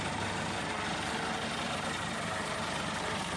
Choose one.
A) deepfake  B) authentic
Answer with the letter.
A